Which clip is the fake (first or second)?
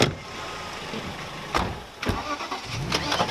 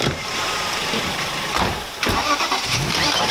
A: second